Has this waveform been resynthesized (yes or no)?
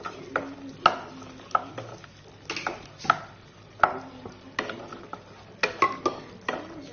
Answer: no